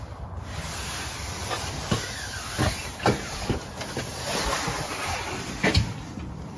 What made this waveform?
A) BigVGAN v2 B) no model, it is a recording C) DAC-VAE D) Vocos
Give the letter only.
B